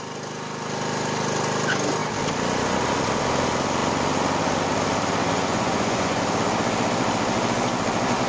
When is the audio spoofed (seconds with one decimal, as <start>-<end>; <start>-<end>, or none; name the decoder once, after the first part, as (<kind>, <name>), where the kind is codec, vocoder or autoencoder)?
5.2-6.2 (vocoder, Vocos)